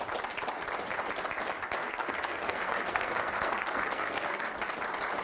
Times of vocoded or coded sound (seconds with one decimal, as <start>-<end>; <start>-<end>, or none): 1.8-4.5